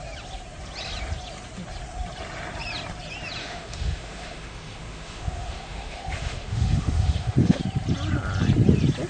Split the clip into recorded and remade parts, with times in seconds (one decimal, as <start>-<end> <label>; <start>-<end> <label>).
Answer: 0.0-3.4 recorded; 3.4-7.6 remade; 7.6-9.1 recorded